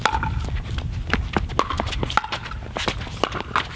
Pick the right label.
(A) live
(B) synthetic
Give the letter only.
A